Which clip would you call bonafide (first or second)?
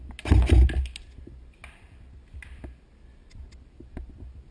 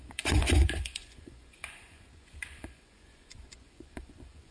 first